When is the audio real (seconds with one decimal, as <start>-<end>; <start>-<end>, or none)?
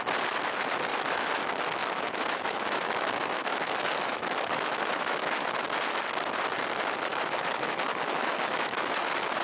0.0-0.9; 1.4-1.8; 5.5-7.1; 9.0-9.4